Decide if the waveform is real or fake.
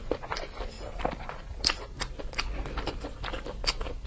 real